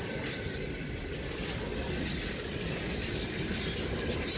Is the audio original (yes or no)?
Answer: yes